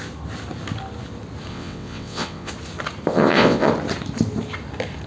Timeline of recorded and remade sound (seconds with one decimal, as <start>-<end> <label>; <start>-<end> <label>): 0.0-1.5 recorded; 1.5-2.5 remade; 2.5-3.1 recorded; 3.1-3.7 remade; 3.7-5.1 recorded